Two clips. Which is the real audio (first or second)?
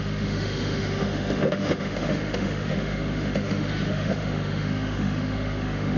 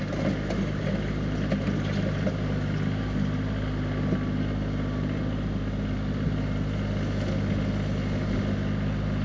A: second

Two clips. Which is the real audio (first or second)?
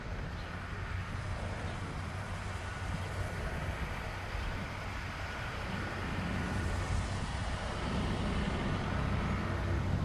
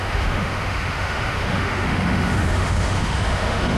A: first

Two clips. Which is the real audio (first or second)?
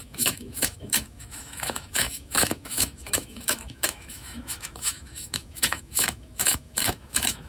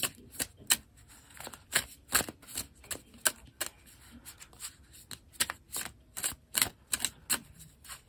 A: second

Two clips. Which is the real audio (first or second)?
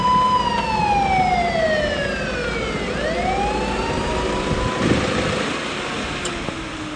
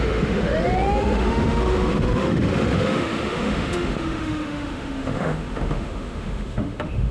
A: first